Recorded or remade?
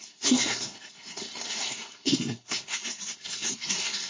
remade